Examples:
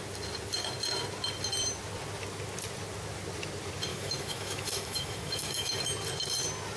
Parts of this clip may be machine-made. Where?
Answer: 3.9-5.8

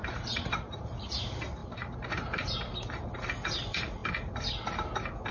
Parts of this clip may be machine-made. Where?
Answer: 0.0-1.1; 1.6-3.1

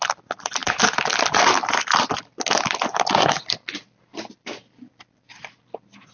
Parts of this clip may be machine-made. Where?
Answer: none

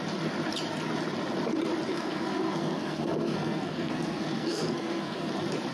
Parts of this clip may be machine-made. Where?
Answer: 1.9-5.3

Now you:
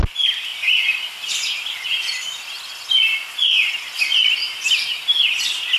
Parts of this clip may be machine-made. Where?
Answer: none

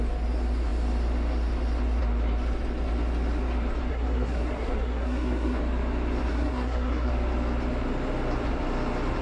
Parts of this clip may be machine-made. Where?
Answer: 3.9-5.6; 6.3-7.1

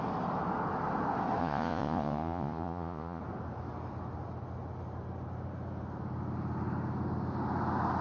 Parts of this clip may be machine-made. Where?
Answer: 1.4-3.2

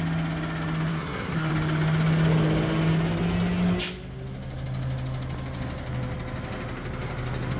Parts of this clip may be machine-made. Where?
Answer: 0.9-1.5